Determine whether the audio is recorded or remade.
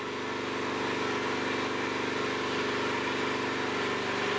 recorded